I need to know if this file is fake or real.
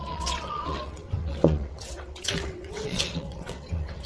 fake